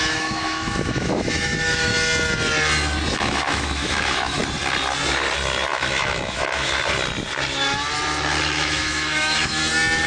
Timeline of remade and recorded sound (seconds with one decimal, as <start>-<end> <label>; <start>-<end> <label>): 0.0-1.9 remade; 1.9-3.2 recorded; 3.2-4.4 remade; 4.4-5.7 recorded; 5.7-6.8 remade; 6.8-8.4 recorded; 8.4-9.6 remade; 9.6-10.1 recorded